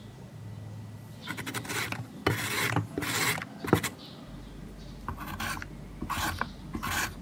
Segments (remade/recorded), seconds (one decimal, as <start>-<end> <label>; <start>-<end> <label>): 0.0-7.2 recorded